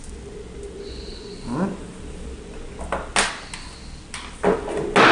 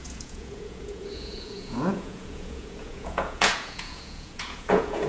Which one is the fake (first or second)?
second